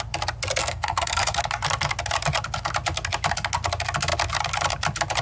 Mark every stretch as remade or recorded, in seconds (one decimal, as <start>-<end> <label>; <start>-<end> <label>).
0.0-0.6 recorded; 0.6-1.4 remade; 1.4-5.2 recorded